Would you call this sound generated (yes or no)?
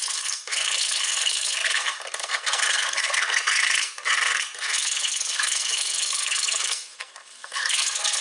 yes